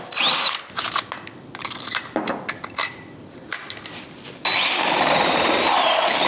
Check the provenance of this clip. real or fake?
real